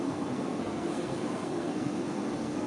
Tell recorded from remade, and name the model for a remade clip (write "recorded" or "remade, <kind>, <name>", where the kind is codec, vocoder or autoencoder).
remade, codec, SNAC